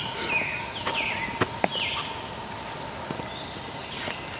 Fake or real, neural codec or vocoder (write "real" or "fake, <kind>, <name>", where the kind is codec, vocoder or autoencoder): real